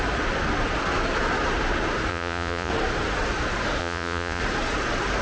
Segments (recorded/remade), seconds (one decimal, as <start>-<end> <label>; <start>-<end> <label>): 0.0-2.1 recorded; 2.1-2.7 remade; 2.7-3.8 recorded; 3.8-4.4 remade; 4.4-5.2 recorded